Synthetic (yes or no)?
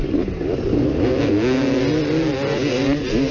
no